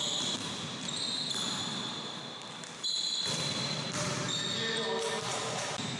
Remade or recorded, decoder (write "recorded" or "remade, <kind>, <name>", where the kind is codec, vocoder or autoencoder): recorded